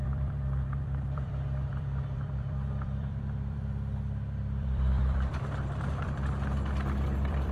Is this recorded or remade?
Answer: remade